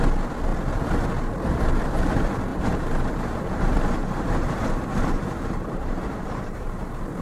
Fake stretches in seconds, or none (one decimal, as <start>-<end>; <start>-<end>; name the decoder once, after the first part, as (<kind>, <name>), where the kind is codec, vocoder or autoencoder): 2.5-6.8 (vocoder, BigVGAN v2)

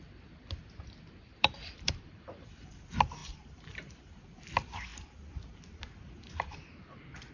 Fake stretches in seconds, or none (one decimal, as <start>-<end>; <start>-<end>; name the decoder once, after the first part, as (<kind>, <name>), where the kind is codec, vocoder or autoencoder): 1.3-2.8 (vocoder, BigVGAN v2); 3.2-4.2

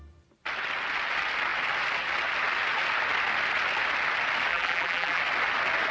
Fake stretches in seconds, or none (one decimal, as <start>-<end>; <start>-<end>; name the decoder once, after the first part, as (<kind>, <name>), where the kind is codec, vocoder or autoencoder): 4.5-5.2 (vocoder, BigVGAN v2)

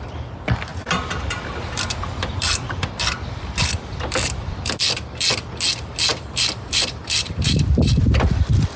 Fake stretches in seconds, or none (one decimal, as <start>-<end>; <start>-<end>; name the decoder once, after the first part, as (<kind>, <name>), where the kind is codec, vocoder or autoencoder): 0.7-4.9 (vocoder, BigVGAN v2); 6.1-8.8